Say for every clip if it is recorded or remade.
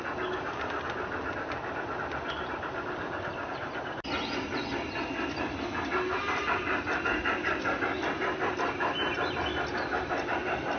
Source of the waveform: recorded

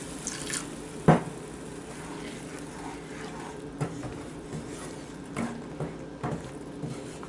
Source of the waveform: recorded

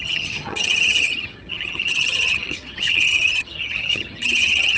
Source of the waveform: remade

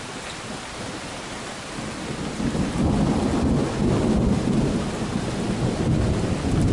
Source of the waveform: recorded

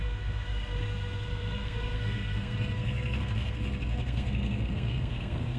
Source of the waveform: remade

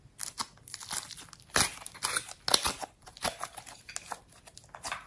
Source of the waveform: recorded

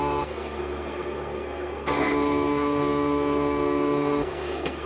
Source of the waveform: remade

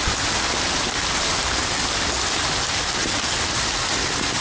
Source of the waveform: recorded